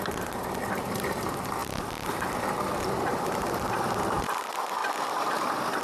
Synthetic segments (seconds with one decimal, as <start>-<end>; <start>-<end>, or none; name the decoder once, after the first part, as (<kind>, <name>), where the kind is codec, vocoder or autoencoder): none